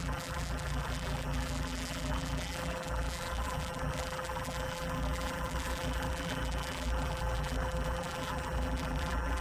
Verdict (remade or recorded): remade